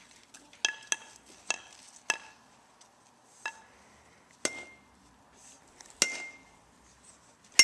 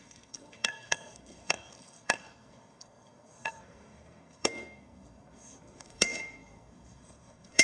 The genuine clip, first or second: first